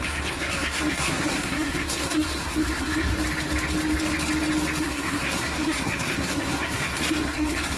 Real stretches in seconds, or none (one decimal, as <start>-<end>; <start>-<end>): 3.1-4.8